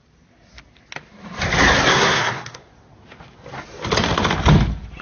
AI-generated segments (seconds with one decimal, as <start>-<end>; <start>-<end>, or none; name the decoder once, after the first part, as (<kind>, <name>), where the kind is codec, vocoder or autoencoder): 1.9-2.7 (codec, SNAC)